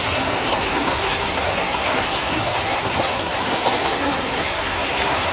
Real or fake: fake